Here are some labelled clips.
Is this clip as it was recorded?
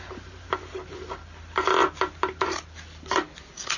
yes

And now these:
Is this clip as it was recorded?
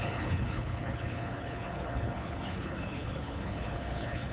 no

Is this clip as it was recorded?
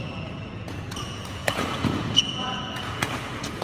no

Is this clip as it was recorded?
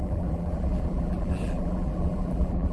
no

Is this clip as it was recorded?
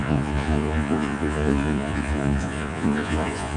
no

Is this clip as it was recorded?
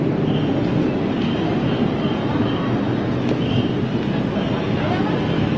yes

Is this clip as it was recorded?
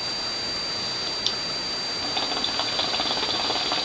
yes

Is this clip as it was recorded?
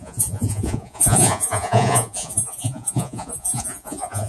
no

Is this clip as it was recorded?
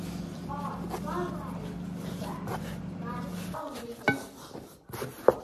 yes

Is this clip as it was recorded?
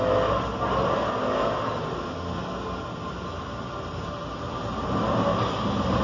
yes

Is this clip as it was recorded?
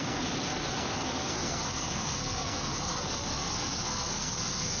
no